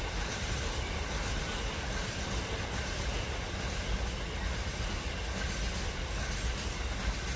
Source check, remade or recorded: recorded